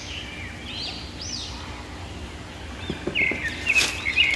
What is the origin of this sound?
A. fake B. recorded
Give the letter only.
B